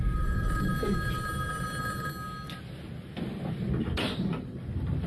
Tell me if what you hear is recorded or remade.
recorded